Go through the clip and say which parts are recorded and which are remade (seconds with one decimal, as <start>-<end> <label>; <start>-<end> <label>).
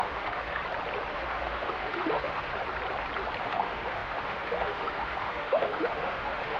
0.0-0.6 remade; 0.6-1.1 recorded; 1.1-2.5 remade; 2.5-3.4 recorded; 3.4-6.6 remade